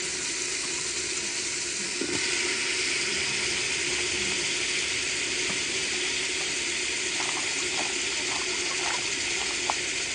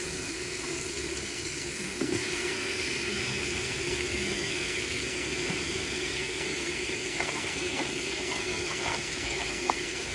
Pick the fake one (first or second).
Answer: second